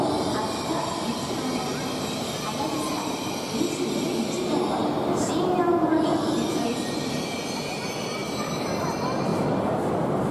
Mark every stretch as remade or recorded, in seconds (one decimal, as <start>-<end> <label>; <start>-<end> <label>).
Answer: 0.0-4.8 recorded; 4.8-7.1 remade; 7.1-8.2 recorded; 8.2-8.8 remade; 8.8-9.3 recorded; 9.3-9.9 remade; 9.9-10.3 recorded